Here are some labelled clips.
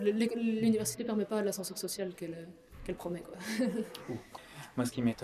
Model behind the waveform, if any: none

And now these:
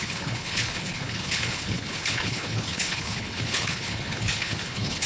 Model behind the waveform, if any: codec, HILCodec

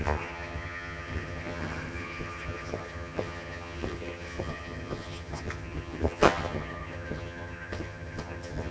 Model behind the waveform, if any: vocoder, HiFi-GAN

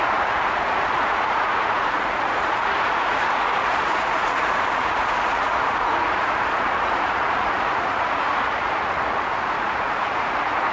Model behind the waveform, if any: vocoder, Vocos